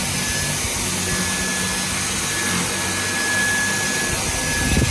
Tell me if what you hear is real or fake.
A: real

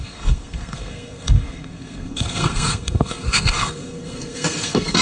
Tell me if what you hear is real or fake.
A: fake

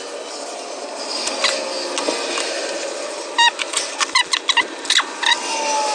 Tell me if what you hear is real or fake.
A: real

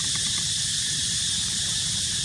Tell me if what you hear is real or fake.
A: fake